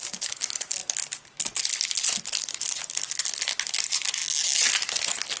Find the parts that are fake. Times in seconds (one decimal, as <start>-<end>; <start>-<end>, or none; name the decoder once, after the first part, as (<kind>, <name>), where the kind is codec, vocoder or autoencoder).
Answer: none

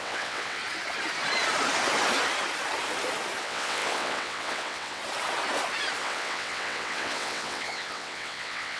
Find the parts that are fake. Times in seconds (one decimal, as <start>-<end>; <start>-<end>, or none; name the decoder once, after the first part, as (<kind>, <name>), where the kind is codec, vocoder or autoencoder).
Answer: 0.0-0.6 (vocoder, WaveNeXt); 3.4-5.0; 6.0-8.8

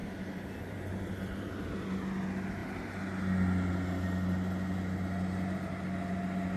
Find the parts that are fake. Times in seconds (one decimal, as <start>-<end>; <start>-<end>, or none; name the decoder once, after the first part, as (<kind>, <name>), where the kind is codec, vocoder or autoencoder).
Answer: 0.0-1.5 (vocoder, BigVGAN v2)

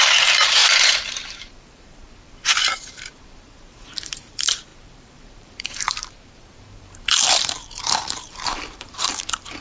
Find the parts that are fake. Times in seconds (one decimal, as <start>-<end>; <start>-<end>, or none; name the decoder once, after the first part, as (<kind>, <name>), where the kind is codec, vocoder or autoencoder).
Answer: 0.0-9.6 (vocoder, BigVGAN v2)

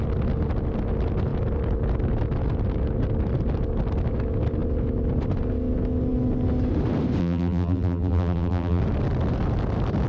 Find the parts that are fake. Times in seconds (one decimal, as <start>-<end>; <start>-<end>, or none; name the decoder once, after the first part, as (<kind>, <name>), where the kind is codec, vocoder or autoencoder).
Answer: 7.2-8.8 (vocoder, BigVGAN v2)